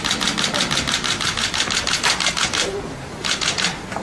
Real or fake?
real